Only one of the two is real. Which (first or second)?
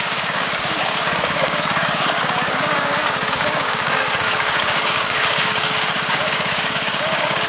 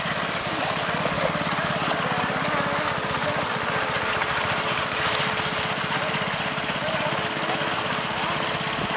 second